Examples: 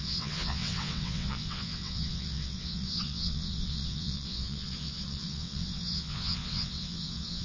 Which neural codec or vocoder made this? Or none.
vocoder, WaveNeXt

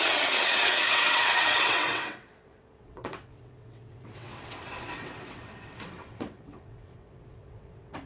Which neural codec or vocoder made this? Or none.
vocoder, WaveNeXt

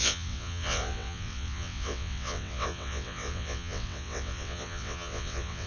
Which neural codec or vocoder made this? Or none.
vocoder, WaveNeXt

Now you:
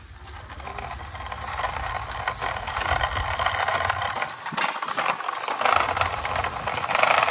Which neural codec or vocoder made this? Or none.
none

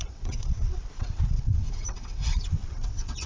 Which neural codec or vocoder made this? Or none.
vocoder, WaveNeXt